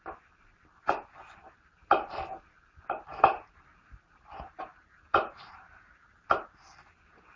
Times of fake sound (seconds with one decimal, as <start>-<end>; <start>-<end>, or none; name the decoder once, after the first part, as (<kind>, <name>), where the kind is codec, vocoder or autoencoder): none